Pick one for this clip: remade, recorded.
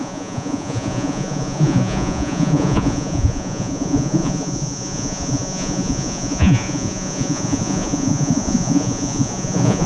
remade